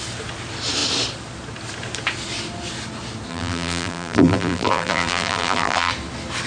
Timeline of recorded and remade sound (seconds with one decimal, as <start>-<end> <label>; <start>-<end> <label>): 0.0-3.3 recorded; 3.3-5.9 remade; 5.9-6.5 recorded